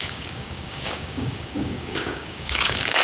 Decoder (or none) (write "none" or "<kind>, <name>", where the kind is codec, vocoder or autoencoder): codec, DAC